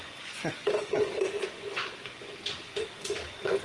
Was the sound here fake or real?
fake